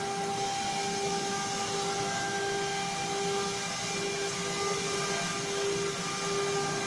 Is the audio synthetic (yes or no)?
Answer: no